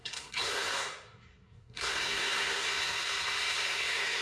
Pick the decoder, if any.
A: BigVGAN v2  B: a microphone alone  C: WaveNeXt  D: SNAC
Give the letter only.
D